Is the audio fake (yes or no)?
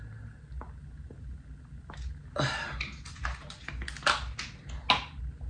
no